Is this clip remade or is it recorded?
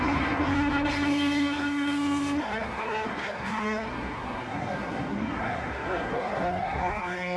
remade